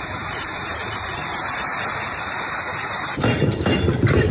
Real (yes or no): no